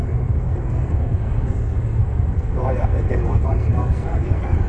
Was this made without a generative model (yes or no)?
no